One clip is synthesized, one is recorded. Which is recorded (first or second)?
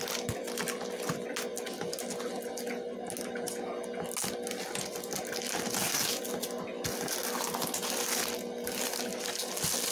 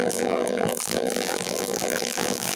first